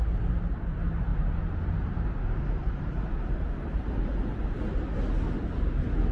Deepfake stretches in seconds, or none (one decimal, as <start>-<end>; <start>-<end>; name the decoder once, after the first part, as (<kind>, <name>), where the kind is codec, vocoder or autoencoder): 1.1-4.8 (vocoder, BigVGAN v2)